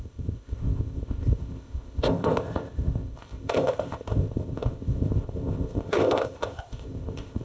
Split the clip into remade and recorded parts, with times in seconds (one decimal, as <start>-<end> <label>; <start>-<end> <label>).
0.0-7.4 remade